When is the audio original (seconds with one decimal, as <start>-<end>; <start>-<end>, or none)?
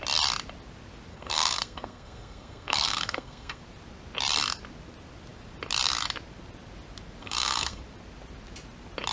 0.0-1.1; 3.6-7.2; 7.8-9.1